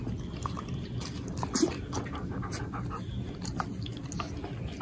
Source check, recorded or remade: recorded